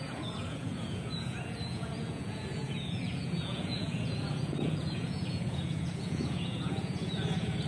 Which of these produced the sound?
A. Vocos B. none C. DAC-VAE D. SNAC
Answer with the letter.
A